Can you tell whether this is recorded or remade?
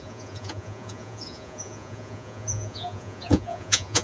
remade